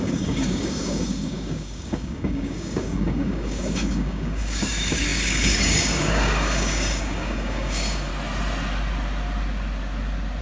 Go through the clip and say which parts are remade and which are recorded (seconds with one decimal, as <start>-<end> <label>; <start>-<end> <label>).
0.0-8.1 remade; 8.1-10.4 recorded